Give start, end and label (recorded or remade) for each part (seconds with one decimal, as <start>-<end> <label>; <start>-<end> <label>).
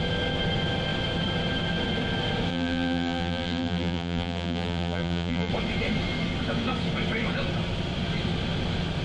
0.0-2.5 recorded; 2.5-5.5 remade; 5.5-9.0 recorded